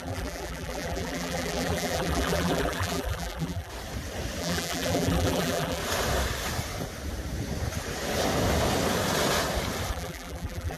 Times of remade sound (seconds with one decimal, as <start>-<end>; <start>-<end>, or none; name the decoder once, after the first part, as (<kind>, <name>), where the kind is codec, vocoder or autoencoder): 0.0-3.7 (vocoder, BigVGAN v2); 4.4-5.8; 9.9-10.8